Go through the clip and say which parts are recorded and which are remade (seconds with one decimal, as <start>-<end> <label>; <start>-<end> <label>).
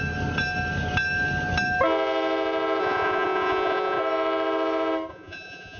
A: 0.0-2.8 recorded; 2.8-4.0 remade; 4.0-5.1 recorded; 5.1-5.8 remade